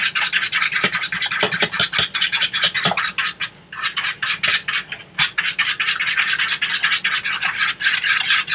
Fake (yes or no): no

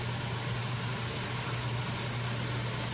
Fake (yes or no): no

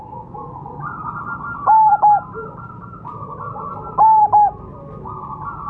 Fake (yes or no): no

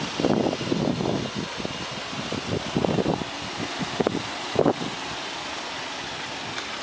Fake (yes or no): no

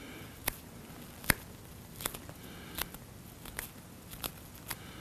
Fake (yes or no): no